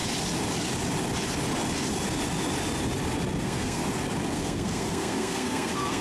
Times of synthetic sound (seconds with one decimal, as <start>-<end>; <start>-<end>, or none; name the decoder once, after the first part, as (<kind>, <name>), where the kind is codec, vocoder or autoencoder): 3.4-3.8 (codec, SNAC); 4.3-6.0